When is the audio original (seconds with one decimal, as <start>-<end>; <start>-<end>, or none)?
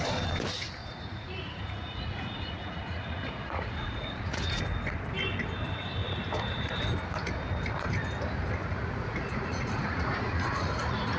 0.0-0.8; 4.6-6.0; 6.7-8.6